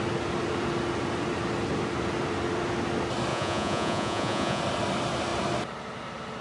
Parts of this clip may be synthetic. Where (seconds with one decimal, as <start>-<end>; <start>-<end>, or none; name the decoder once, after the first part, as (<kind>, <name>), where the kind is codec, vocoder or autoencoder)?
3.3-4.6 (vocoder, Vocos)